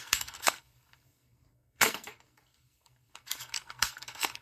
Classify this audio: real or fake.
fake